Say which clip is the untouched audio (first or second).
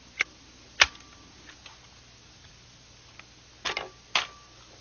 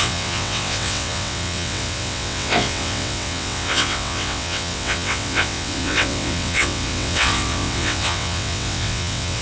first